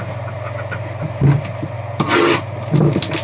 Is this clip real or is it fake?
real